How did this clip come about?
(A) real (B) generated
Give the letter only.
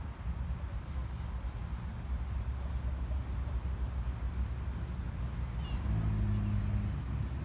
A